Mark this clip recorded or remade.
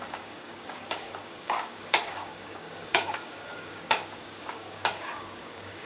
remade